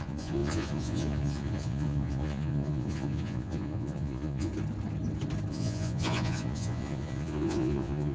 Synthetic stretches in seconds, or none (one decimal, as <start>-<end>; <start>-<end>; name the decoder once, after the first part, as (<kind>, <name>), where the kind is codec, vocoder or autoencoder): 0.0-4.5 (vocoder, Vocos); 5.5-8.1